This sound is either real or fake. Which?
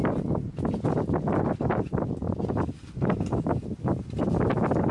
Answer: real